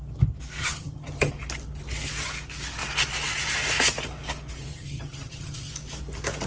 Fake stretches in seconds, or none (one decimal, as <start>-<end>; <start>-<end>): 0.6-1.3; 4.7-5.7